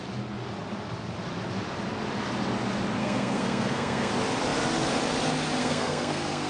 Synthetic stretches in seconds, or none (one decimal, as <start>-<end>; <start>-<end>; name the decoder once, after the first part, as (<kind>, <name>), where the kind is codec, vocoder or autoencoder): 3.0-4.1 (codec, SNAC); 5.6-6.5